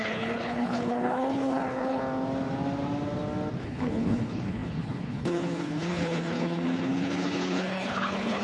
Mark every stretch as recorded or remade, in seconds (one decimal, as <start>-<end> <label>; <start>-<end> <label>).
0.0-2.0 remade; 2.0-3.6 recorded; 3.6-8.4 remade